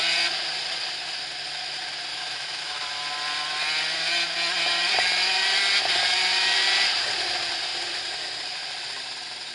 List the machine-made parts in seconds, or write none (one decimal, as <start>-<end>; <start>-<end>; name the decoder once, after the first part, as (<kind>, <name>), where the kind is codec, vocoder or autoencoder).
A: 2.1-3.0 (autoencoder, DAC-VAE)